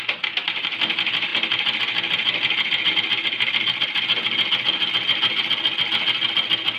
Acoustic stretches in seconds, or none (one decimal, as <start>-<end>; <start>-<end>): 0.0-6.8

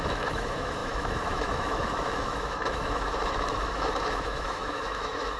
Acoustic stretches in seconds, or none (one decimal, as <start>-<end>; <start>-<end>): none

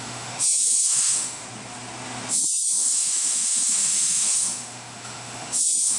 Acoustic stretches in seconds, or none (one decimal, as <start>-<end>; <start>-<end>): 1.4-2.3

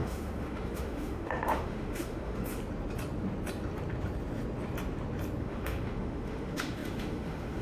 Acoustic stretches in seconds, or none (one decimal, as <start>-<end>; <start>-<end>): 2.6-5.4

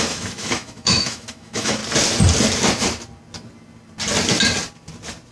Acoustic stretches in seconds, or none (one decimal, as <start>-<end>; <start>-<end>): 1.8-5.3

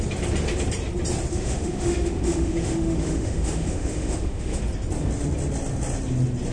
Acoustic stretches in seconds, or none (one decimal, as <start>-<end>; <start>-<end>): 0.0-1.3; 4.6-6.5

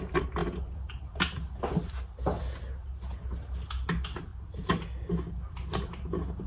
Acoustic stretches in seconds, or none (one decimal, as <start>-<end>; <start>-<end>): 0.0-6.5